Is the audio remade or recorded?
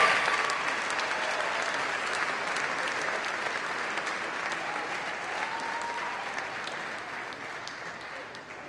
recorded